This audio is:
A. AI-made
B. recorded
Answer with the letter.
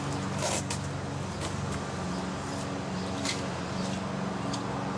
B